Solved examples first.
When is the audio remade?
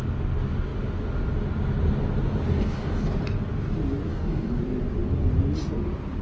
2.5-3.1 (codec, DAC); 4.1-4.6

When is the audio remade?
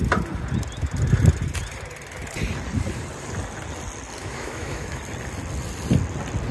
4.2-5.0 (autoencoder, DAC-VAE)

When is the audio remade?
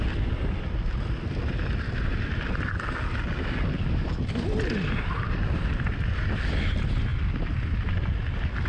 none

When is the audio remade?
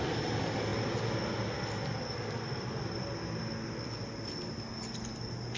none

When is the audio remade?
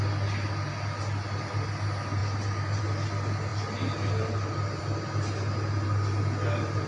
none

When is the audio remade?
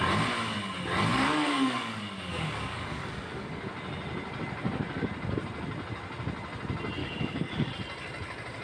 1.1-3.6 (codec, DAC); 7.0-7.7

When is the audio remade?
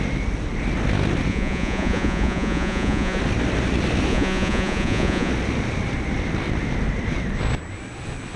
1.3-3.2 (vocoder, Vocos); 4.1-5.3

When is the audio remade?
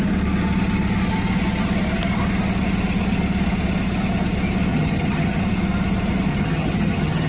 4.7-5.4 (vocoder, HiFi-GAN); 6.3-7.3